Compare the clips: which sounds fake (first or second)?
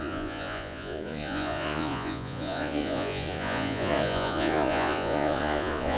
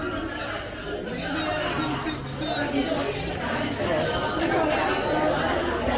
first